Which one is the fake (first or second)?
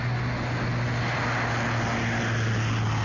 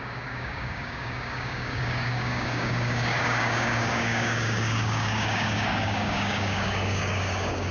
second